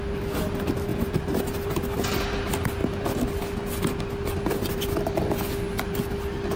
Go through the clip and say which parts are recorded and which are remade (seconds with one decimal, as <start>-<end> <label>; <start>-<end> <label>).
0.0-0.9 recorded; 0.9-1.4 remade; 1.4-6.6 recorded